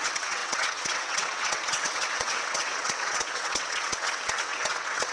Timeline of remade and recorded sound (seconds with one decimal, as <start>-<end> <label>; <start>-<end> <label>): 0.0-5.1 remade